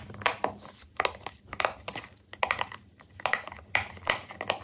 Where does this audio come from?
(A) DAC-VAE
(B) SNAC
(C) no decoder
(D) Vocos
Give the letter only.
C